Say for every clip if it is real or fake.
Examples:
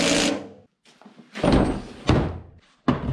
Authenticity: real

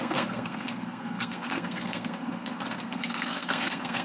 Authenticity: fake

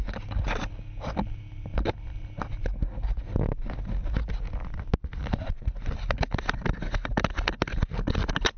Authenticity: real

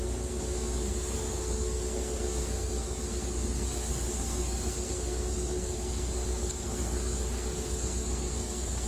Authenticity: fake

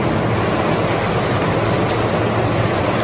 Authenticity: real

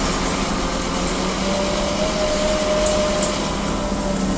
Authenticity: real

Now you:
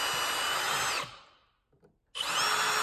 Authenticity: real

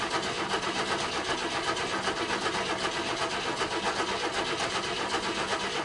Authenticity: real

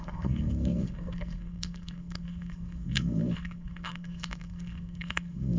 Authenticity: fake